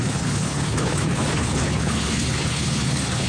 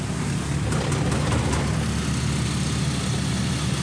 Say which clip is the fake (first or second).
first